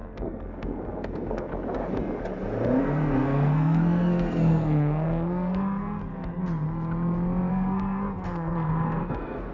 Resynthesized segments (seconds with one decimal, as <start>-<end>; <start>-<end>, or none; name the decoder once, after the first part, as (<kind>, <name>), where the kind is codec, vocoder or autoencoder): 0.0-1.5 (codec, SNAC); 2.8-6.0; 7.5-9.5